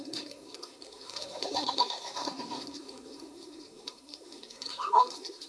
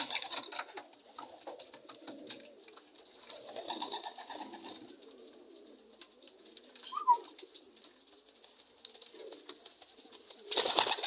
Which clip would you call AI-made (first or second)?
first